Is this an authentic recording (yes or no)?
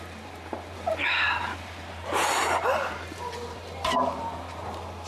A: no